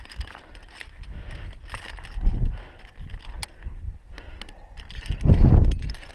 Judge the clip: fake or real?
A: real